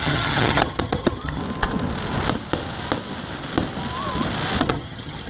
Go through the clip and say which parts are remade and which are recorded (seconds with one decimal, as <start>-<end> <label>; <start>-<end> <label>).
0.0-1.4 remade; 1.4-4.6 recorded; 4.6-5.3 remade